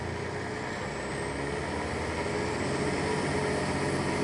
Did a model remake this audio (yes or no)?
no